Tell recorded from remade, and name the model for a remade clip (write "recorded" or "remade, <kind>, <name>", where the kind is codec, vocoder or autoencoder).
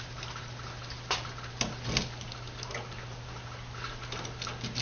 recorded